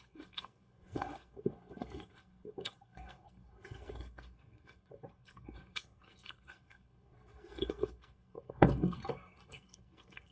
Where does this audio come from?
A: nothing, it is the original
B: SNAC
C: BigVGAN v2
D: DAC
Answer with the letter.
B